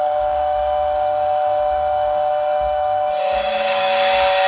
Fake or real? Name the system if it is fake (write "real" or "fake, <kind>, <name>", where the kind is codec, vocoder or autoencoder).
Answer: fake, codec, DAC